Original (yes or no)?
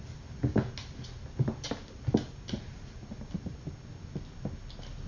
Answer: yes